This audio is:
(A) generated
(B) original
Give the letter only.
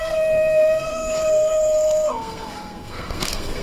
A